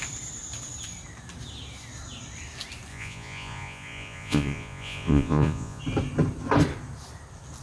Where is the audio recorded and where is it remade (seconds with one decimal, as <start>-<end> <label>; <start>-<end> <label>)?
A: 0.0-2.9 recorded; 2.9-5.8 remade; 5.8-7.6 recorded